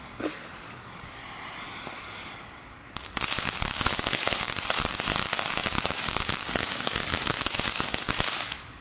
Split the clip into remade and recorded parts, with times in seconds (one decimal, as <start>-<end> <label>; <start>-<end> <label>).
0.0-1.2 remade; 1.2-2.0 recorded; 2.0-8.8 remade